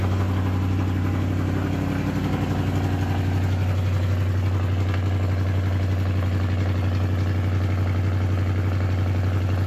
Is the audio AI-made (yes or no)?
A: no